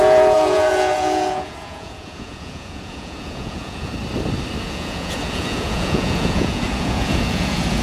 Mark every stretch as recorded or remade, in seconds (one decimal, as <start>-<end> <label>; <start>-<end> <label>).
0.0-3.9 remade; 3.9-4.6 recorded; 4.6-7.8 remade

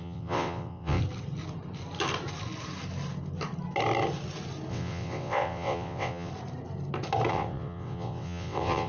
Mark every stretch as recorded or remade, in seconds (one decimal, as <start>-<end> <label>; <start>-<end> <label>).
0.0-1.0 remade; 1.0-4.7 recorded; 4.7-6.3 remade; 6.3-7.3 recorded; 7.3-8.9 remade

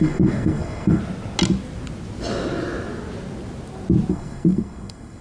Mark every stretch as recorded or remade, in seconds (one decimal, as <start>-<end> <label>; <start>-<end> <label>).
0.0-1.0 remade; 1.0-4.1 recorded; 4.1-5.2 remade

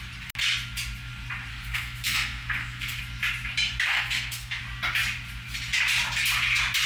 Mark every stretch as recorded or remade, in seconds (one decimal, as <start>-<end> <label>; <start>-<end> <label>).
0.0-1.5 recorded; 1.5-3.0 remade; 3.0-3.9 recorded; 3.9-4.6 remade; 4.6-6.9 recorded

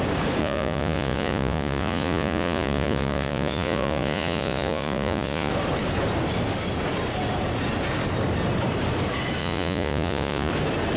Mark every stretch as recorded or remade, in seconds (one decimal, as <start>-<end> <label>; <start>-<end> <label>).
0.0-0.4 recorded; 0.4-5.5 remade; 5.5-9.4 recorded; 9.4-10.5 remade; 10.5-11.0 recorded

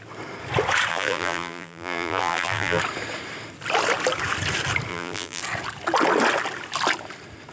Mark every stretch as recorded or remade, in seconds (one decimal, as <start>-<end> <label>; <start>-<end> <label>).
0.0-0.9 recorded; 0.9-2.8 remade; 2.8-4.9 recorded; 4.9-5.4 remade; 5.4-7.5 recorded